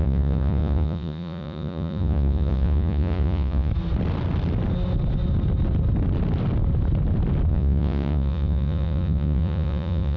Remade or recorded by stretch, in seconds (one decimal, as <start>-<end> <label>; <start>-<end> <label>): 0.0-3.7 remade; 3.7-7.5 recorded; 7.5-10.2 remade